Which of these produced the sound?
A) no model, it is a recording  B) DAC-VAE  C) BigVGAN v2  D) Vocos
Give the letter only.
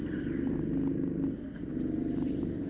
A